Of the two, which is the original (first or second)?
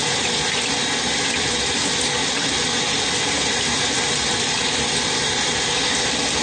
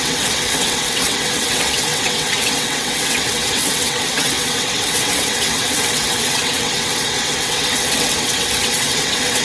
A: first